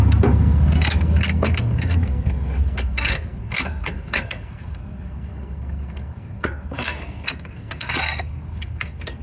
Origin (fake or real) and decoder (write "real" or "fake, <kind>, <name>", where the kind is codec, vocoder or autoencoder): fake, codec, SNAC